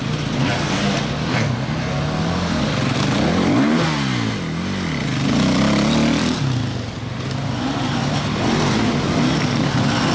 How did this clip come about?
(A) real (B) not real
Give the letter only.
A